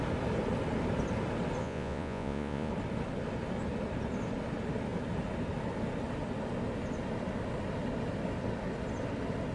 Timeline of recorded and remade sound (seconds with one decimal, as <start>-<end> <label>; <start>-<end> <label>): 0.0-1.6 recorded; 1.6-2.7 remade; 2.7-9.5 recorded

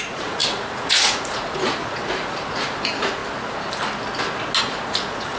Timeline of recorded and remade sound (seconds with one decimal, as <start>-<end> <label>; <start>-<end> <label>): 0.0-3.2 remade; 3.2-4.6 recorded; 4.6-5.4 remade

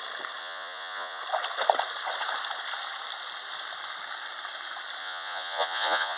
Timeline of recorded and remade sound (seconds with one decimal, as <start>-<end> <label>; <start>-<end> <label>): 0.0-0.4 recorded; 0.4-1.2 remade; 1.2-5.0 recorded; 5.0-6.2 remade

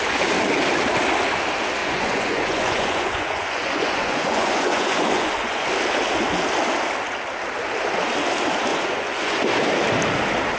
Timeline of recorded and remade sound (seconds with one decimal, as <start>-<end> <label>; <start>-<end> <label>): 0.0-1.8 recorded; 1.8-5.7 remade; 5.7-8.7 recorded; 8.7-9.4 remade; 9.4-10.6 recorded

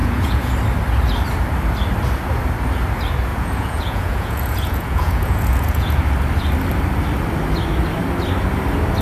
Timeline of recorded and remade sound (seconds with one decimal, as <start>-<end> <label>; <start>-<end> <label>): 0.0-0.5 remade; 0.5-3.3 recorded; 3.3-6.0 remade; 6.0-9.0 recorded

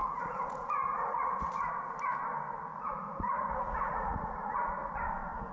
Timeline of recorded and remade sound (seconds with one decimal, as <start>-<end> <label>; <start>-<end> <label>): 0.0-1.7 remade; 1.7-2.7 recorded; 2.7-4.9 remade; 4.9-5.5 recorded

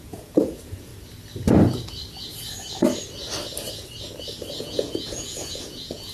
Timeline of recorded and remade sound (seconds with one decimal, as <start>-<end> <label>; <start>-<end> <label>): 0.0-0.9 remade; 0.9-4.6 recorded; 4.6-6.1 remade